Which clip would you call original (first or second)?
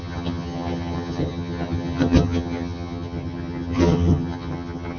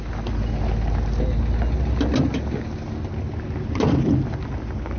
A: second